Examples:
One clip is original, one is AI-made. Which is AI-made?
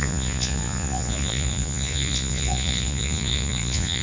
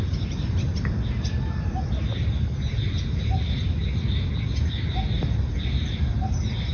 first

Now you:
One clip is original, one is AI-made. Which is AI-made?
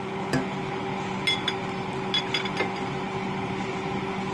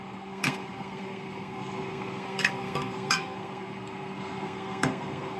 second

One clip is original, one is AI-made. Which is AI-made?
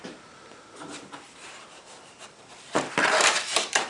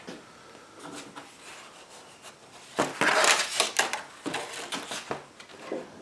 first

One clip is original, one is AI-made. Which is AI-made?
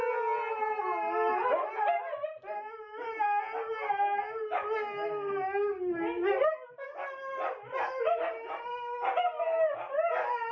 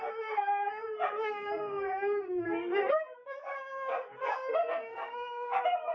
second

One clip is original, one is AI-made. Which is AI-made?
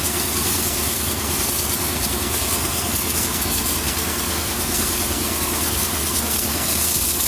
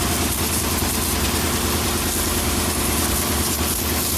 first